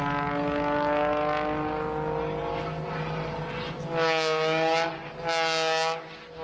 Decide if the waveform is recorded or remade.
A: recorded